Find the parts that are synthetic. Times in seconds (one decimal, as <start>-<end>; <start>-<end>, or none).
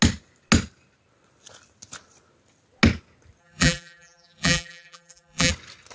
3.4-5.5